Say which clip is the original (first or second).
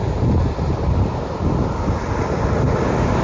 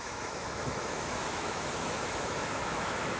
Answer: first